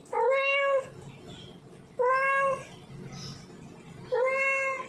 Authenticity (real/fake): real